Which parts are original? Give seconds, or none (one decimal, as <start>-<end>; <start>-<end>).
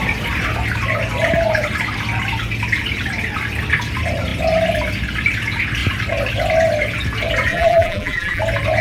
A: 0.0-7.5; 8.4-8.8